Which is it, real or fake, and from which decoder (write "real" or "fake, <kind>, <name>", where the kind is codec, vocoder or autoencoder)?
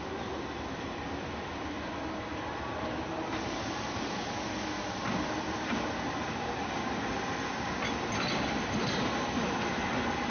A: real